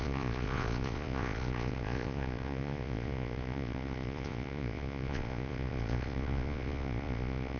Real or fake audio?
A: fake